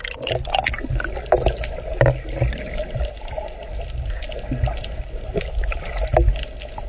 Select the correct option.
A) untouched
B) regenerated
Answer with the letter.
A